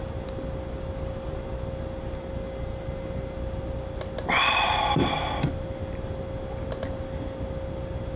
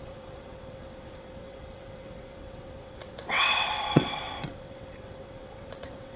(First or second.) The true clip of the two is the first